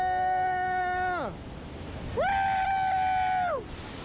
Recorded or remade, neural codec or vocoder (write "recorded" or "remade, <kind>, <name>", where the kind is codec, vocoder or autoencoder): recorded